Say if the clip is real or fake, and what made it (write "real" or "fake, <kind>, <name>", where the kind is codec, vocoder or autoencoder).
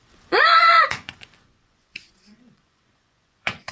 fake, vocoder, Vocos